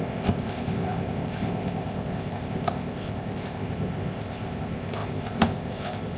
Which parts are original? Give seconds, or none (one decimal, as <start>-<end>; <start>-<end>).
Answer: none